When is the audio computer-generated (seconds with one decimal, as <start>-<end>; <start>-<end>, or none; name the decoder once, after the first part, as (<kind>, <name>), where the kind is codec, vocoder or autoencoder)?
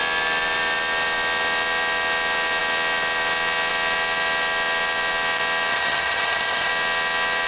5.7-6.7 (vocoder, HiFi-GAN)